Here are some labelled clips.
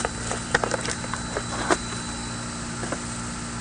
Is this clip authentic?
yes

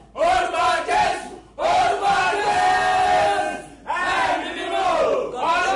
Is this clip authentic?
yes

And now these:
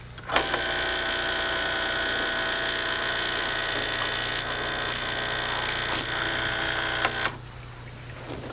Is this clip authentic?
yes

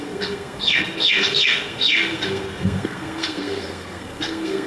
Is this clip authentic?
no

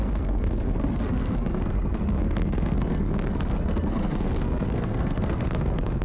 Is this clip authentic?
no